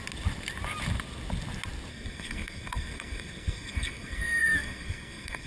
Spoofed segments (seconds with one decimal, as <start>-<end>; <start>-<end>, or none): 1.9-5.5

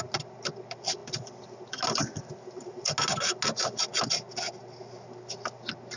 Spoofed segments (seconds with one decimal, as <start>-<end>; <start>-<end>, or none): none

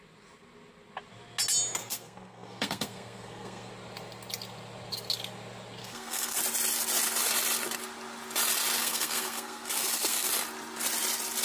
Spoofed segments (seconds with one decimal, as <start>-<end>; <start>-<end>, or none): 1.8-3.7; 5.8-6.4; 8.8-10.3

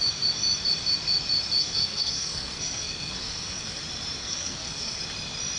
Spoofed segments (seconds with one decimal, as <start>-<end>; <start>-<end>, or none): 1.6-3.8; 4.2-5.0